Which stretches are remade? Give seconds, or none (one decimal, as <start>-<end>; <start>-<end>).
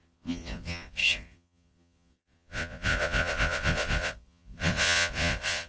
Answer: 0.0-5.7